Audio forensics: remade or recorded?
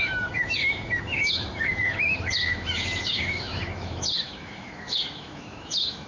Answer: remade